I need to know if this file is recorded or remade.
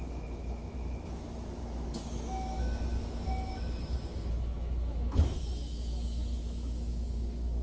remade